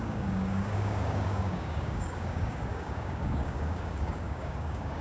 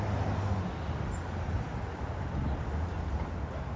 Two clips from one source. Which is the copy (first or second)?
first